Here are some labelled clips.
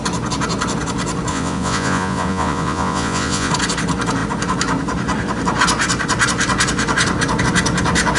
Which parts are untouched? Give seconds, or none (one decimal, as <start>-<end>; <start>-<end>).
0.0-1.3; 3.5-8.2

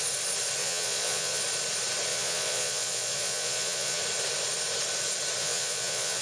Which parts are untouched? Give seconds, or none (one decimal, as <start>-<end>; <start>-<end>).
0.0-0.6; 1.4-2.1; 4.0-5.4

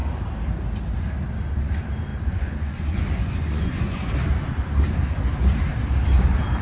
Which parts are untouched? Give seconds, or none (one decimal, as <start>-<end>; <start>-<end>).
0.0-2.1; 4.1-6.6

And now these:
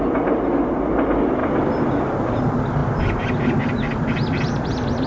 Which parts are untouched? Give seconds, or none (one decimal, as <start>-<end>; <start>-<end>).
0.0-5.1